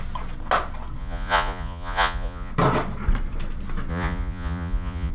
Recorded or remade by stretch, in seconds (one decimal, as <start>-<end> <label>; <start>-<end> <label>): 0.0-1.0 recorded; 1.0-2.5 remade; 2.5-3.9 recorded; 3.9-5.1 remade